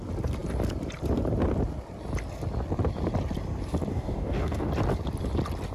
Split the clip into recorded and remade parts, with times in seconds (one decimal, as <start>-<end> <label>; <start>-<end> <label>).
0.0-3.9 recorded; 3.9-4.7 remade; 4.7-5.7 recorded